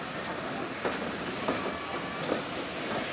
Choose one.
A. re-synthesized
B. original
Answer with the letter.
B